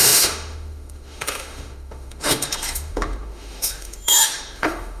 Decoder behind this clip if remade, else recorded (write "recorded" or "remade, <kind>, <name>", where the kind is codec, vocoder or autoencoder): remade, autoencoder, DAC-VAE